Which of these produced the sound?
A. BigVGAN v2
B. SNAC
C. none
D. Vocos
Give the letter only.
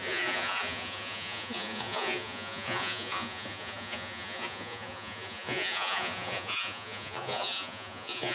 D